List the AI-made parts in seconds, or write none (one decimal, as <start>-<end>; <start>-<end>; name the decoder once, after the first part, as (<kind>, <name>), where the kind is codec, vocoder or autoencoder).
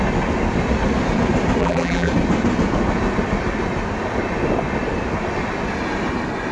1.6-2.1 (vocoder, BigVGAN v2)